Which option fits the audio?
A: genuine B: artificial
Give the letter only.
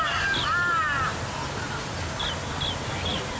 A